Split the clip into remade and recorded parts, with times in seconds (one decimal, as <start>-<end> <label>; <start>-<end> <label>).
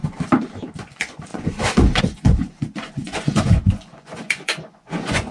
0.0-0.8 recorded; 0.8-5.3 remade